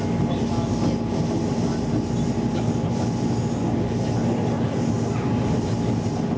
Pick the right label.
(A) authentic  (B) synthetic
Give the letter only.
A